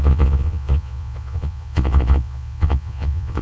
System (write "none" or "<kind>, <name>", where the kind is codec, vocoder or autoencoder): vocoder, Vocos